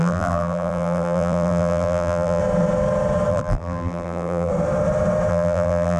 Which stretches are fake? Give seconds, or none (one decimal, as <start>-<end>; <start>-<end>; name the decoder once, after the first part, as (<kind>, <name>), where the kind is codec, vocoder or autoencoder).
0.0-2.4 (vocoder, BigVGAN v2); 3.3-4.5; 5.3-6.0